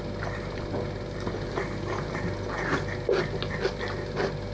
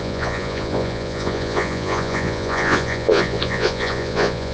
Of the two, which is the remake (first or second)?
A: second